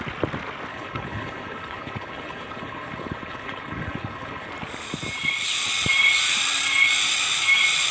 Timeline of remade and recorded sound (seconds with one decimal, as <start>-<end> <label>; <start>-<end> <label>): 0.0-0.7 recorded; 0.7-4.5 remade; 4.5-7.9 recorded